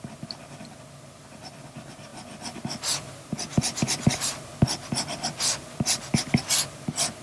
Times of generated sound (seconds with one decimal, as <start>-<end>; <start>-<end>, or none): none